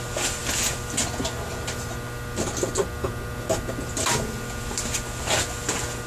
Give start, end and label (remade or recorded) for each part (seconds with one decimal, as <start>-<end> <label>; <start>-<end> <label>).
0.0-6.1 recorded